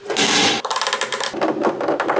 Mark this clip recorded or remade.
recorded